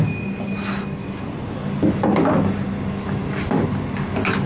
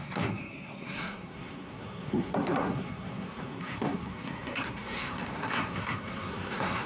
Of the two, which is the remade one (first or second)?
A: second